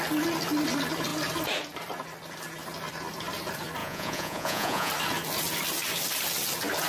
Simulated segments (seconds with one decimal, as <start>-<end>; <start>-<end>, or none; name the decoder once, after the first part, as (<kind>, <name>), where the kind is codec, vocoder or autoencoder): 3.8-4.9 (vocoder, Vocos)